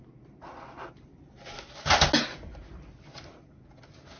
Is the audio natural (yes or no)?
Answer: yes